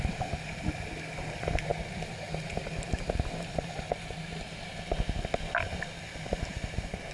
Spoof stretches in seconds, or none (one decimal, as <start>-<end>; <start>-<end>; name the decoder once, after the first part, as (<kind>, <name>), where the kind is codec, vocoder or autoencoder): none